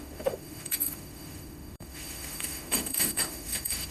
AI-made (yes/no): yes